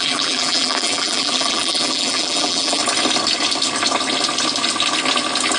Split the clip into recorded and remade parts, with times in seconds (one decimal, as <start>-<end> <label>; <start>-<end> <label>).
0.0-2.8 remade; 2.8-5.6 recorded